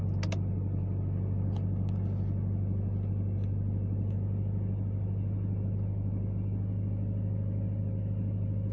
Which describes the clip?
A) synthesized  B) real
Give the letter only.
B